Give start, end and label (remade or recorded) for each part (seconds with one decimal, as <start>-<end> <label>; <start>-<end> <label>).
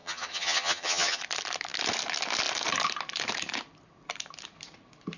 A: 0.0-1.2 remade; 1.2-5.2 recorded